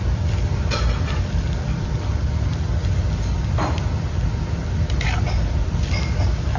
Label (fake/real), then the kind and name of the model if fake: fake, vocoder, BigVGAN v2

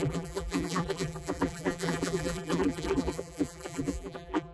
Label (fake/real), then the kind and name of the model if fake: fake, vocoder, BigVGAN v2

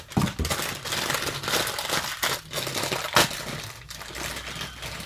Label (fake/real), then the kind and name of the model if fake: real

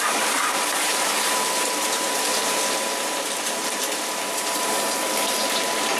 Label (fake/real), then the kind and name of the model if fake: fake, vocoder, BigVGAN v2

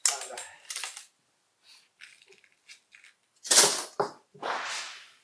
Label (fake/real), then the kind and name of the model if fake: real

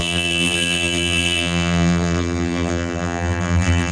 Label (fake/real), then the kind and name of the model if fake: fake, vocoder, BigVGAN v2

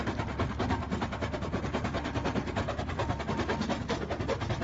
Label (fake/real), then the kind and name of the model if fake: real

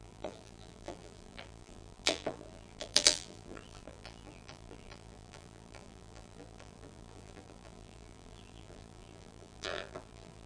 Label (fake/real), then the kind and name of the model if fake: fake, vocoder, BigVGAN v2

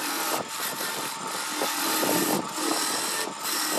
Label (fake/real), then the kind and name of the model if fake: real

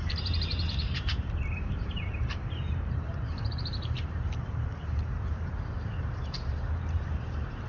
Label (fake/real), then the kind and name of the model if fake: fake, vocoder, BigVGAN v2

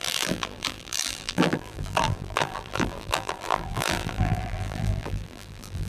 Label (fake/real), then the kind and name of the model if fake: fake, vocoder, BigVGAN v2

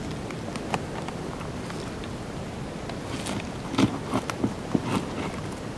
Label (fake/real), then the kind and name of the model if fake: real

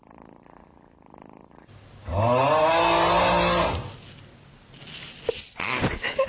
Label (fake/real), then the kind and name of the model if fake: real